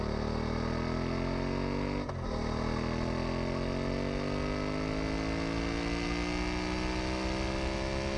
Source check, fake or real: real